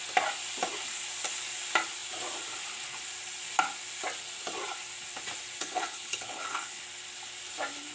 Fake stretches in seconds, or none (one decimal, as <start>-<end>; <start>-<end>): 5.6-6.8